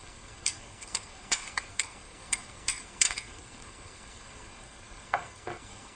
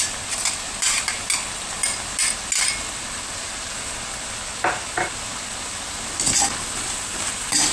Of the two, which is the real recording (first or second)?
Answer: second